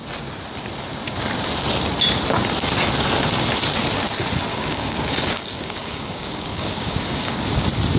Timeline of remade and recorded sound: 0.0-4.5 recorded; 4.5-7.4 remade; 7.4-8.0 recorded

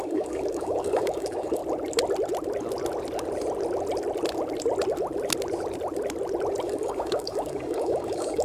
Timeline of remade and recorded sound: 0.0-1.6 remade; 1.6-6.6 recorded; 6.6-8.4 remade

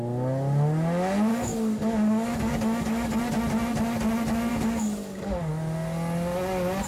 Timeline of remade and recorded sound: 0.0-1.3 recorded; 1.3-3.2 remade; 3.2-4.5 recorded; 4.5-5.5 remade; 5.5-6.9 recorded

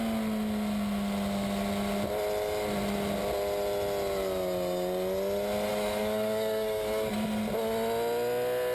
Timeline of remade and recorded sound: 0.0-5.7 recorded; 5.7-7.1 remade; 7.1-8.7 recorded

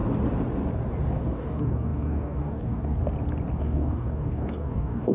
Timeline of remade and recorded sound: 0.0-1.2 recorded; 1.2-3.0 remade; 3.0-3.6 recorded; 3.6-5.1 remade

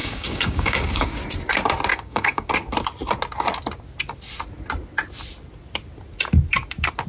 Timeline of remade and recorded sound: 0.0-1.1 remade; 1.1-1.9 recorded; 1.9-2.5 remade; 2.5-7.1 recorded